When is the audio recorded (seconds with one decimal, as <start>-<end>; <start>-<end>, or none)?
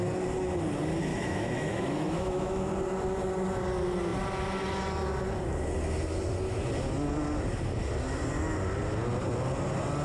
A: 0.0-1.1; 2.7-10.0